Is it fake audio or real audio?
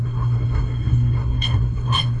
fake